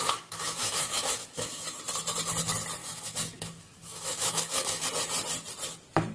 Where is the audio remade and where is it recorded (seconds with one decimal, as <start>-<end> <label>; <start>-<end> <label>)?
0.0-1.8 remade; 1.8-2.8 recorded; 2.8-4.8 remade; 4.8-6.1 recorded